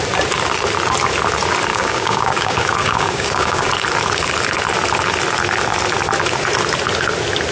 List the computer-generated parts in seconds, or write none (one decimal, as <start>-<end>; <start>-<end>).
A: 1.7-3.7